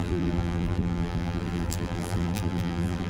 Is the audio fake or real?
fake